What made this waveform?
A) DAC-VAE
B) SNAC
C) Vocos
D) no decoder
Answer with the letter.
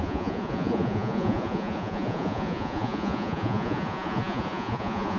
C